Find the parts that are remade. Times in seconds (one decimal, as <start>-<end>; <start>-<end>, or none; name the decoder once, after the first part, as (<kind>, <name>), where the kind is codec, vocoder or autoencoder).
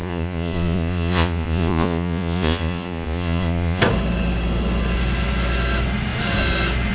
0.0-3.8 (vocoder, Vocos)